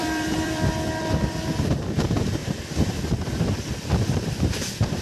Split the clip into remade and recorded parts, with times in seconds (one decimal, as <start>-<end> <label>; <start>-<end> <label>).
0.0-5.0 remade